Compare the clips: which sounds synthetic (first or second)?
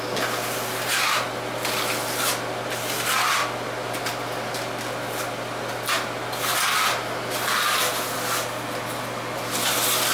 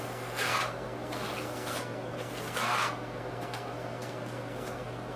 second